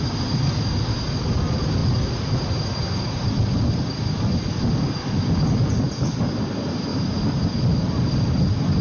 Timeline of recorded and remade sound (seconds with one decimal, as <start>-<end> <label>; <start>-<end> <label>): 0.0-8.8 recorded

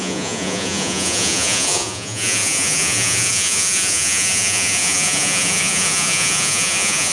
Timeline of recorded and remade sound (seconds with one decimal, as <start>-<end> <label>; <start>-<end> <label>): 0.0-7.1 remade

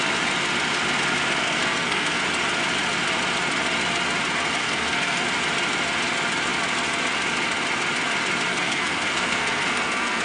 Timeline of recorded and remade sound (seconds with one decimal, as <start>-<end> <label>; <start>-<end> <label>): 0.0-1.4 recorded; 1.4-2.2 remade; 2.2-4.6 recorded; 4.6-5.2 remade; 5.2-8.5 recorded; 8.5-10.2 remade

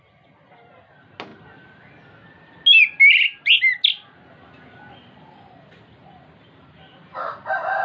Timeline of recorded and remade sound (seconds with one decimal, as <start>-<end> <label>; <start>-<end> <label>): 0.0-7.8 recorded